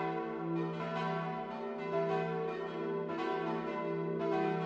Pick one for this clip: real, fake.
real